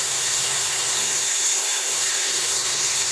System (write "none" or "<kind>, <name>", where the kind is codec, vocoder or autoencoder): codec, SNAC